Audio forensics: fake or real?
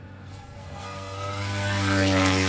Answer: fake